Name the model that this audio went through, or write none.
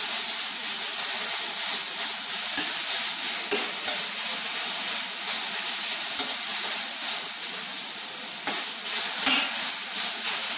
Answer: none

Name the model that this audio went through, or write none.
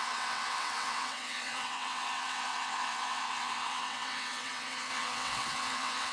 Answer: vocoder, WaveNeXt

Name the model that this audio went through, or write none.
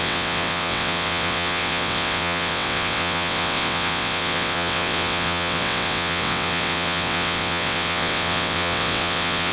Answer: vocoder, WaveNeXt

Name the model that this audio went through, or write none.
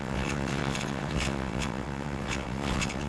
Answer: vocoder, WaveNeXt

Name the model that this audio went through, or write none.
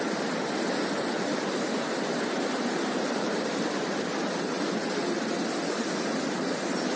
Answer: none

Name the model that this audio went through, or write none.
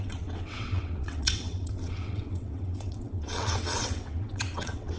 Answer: vocoder, WaveNeXt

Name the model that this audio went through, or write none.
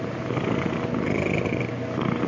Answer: none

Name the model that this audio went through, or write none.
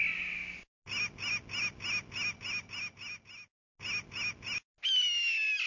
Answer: none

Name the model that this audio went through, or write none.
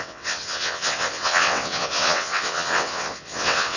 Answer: vocoder, WaveNeXt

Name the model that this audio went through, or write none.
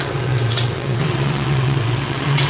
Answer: vocoder, WaveNeXt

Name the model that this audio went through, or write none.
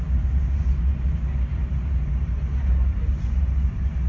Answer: none